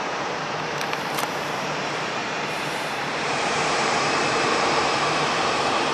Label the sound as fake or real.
fake